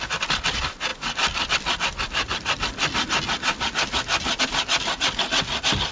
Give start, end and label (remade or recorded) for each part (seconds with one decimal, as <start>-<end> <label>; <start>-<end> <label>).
0.0-5.9 recorded